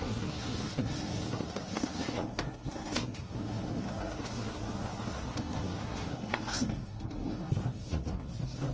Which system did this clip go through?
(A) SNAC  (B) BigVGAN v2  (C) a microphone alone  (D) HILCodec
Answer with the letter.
A